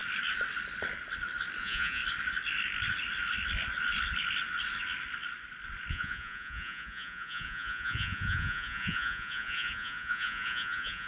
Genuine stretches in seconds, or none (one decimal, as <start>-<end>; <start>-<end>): 0.0-1.6; 2.0-5.9